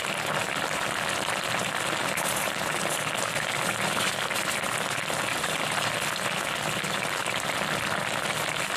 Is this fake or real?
real